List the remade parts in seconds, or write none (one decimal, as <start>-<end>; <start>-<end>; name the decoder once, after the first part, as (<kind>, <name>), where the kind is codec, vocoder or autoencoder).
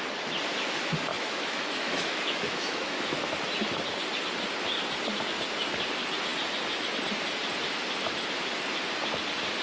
1.1-3.3 (autoencoder, DAC-VAE)